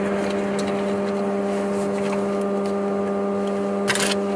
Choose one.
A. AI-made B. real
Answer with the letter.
B